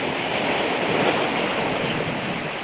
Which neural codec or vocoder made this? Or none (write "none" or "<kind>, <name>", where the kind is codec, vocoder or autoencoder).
none